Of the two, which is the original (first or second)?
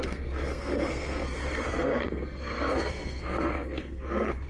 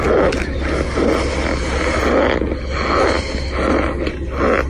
second